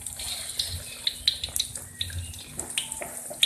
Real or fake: real